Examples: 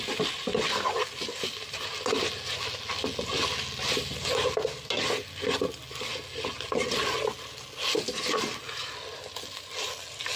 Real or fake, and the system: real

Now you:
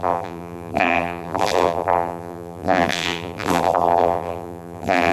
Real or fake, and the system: fake, vocoder, BigVGAN v2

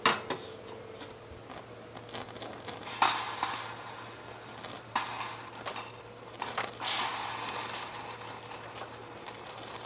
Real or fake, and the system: real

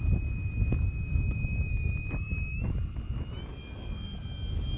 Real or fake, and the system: real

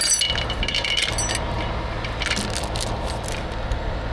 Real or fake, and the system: real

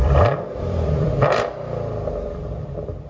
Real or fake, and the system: fake, vocoder, BigVGAN v2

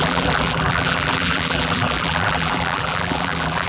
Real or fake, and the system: fake, vocoder, BigVGAN v2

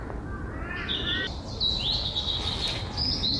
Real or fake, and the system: real